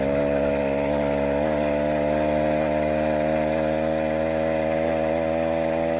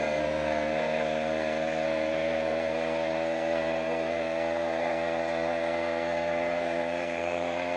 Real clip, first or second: first